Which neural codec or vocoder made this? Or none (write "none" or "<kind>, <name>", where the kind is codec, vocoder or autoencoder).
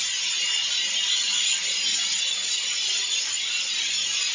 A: none